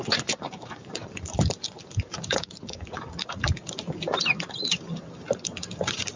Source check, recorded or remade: remade